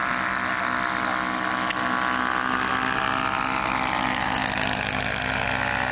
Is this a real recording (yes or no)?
yes